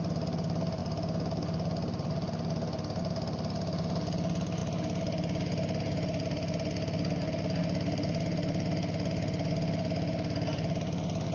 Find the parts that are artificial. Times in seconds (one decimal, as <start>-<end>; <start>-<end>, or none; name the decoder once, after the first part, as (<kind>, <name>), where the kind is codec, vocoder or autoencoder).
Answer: none